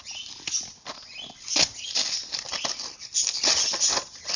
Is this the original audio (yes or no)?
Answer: yes